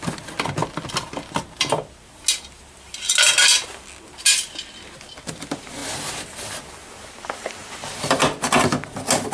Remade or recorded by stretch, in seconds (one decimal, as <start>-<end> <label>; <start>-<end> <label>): 0.0-5.8 recorded; 5.8-6.7 remade; 6.7-7.6 recorded; 7.6-8.2 remade; 8.2-9.3 recorded